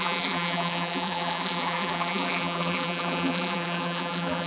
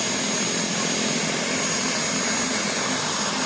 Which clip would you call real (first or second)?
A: second